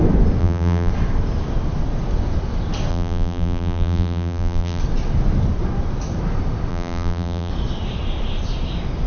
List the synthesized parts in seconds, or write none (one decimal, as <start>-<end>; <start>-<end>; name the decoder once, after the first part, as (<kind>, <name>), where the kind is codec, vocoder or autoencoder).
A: 0.4-0.9 (vocoder, BigVGAN v2); 2.9-4.8; 6.7-7.5

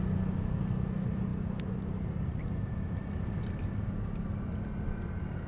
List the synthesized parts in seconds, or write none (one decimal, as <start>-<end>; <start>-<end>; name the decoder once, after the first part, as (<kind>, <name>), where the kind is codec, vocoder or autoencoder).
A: none

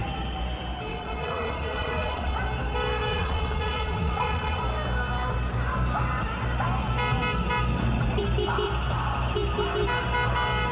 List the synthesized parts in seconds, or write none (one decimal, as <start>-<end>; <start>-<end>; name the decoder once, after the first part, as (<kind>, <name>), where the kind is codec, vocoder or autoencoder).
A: 0.9-2.3 (vocoder, Vocos); 3.1-4.6

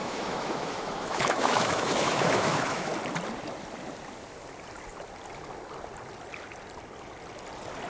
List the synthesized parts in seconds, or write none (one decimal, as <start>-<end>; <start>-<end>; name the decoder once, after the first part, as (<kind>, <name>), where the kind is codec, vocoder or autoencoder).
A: 0.0-2.9 (autoencoder, DAC-VAE)

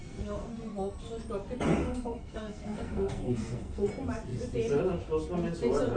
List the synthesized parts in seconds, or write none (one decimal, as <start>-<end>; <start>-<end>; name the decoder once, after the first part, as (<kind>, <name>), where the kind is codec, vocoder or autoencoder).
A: 0.0-1.0 (codec, SNAC); 1.8-3.9

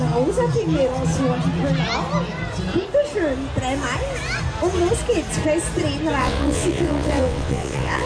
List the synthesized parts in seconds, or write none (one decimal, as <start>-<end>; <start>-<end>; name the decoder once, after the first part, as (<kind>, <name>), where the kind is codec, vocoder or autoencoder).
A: 6.2-8.1 (vocoder, WaveNeXt)

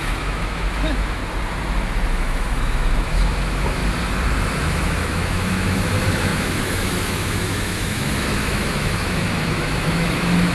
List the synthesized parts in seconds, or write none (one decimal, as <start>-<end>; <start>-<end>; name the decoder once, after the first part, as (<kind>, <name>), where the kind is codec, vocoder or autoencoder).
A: 0.0-1.2 (autoencoder, DAC-VAE); 2.1-3.8; 4.6-10.5